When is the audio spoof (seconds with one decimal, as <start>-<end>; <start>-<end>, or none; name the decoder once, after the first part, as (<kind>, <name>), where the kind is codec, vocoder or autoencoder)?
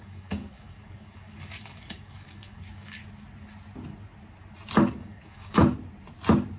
0.0-3.0 (codec, DAC); 4.8-5.6